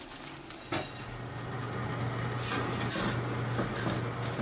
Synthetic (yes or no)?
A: yes